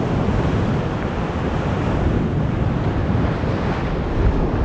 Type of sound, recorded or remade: recorded